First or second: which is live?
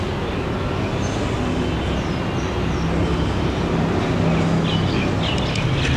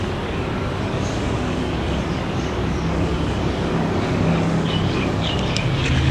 first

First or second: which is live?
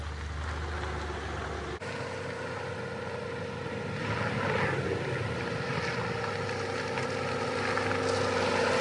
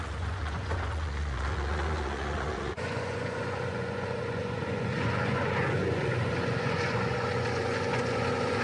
first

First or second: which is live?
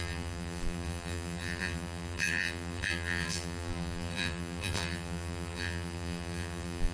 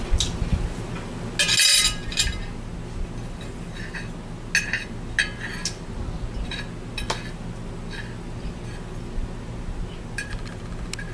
second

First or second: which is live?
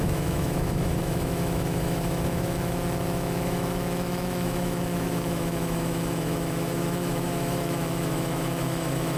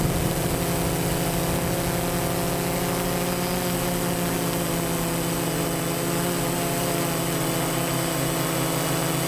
second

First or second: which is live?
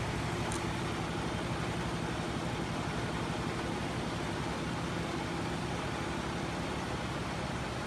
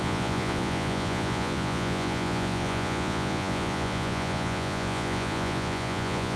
first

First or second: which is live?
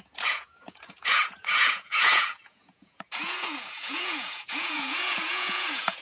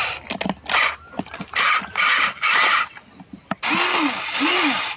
second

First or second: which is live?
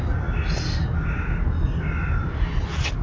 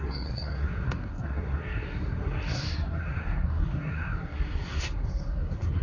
first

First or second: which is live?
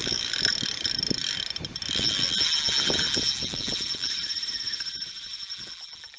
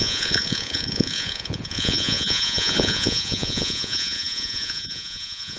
first